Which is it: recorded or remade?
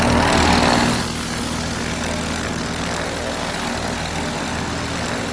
recorded